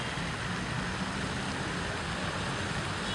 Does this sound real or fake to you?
real